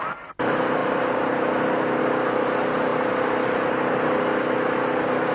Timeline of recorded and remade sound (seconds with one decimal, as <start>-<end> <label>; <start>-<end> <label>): 0.0-5.3 recorded